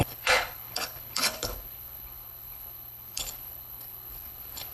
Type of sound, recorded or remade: remade